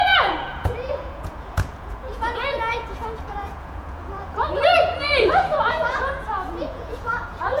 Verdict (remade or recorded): remade